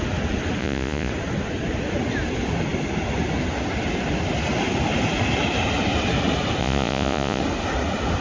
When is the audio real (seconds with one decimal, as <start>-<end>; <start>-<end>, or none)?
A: 0.0-0.6; 1.1-6.6; 7.4-8.2